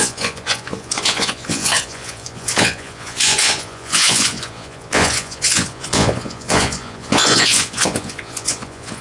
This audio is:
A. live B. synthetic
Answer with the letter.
B